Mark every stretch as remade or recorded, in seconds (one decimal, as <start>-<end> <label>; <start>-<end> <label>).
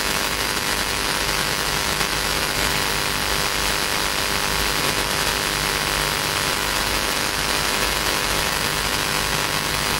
0.0-2.7 remade; 2.7-4.8 recorded; 4.8-5.3 remade; 5.3-6.5 recorded; 6.5-10.0 remade